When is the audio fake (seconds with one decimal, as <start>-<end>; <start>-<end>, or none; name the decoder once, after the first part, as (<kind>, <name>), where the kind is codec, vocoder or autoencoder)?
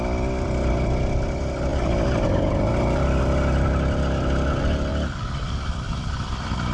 1.7-3.2 (vocoder, BigVGAN v2)